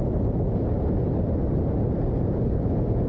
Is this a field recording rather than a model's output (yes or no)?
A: yes